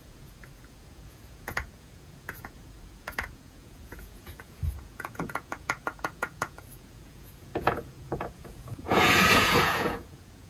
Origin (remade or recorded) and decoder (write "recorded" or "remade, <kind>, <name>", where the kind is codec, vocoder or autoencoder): remade, vocoder, Vocos